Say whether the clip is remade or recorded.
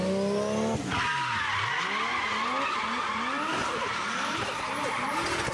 recorded